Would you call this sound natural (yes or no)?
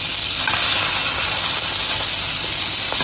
yes